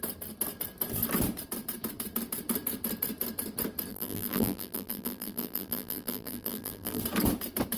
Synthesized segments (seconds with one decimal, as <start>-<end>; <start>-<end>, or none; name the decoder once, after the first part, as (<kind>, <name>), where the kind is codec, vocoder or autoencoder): 3.9-7.0 (vocoder, BigVGAN v2)